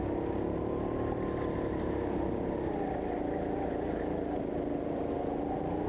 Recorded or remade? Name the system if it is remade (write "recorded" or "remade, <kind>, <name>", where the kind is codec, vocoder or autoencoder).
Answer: recorded